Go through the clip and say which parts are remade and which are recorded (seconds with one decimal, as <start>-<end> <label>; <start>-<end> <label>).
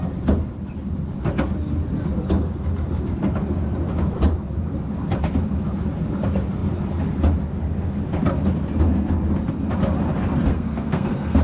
0.0-10.5 recorded; 10.5-11.4 remade